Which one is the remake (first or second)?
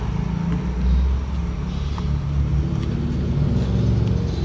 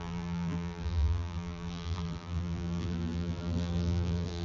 second